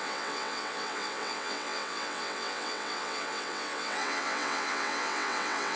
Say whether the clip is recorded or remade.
remade